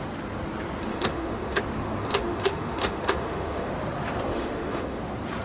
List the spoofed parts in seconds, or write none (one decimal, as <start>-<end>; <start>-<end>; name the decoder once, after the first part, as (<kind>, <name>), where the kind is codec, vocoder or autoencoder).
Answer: 0.9-1.6 (autoencoder, DAC-VAE); 2.0-3.7; 4.3-5.0